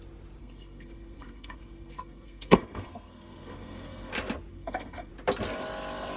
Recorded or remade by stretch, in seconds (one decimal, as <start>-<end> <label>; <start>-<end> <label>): 0.0-0.4 recorded; 0.4-4.1 remade; 4.1-4.5 recorded; 4.5-5.1 remade; 5.1-6.2 recorded